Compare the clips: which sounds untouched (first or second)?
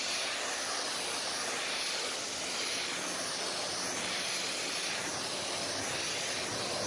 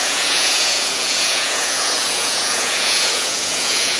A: first